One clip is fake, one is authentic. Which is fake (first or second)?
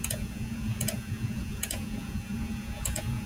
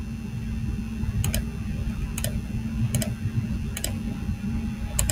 first